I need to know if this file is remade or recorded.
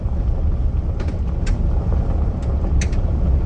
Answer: recorded